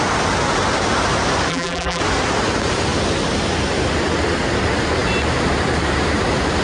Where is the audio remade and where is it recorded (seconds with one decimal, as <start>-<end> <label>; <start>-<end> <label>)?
0.0-1.5 recorded; 1.5-2.0 remade; 2.0-6.6 recorded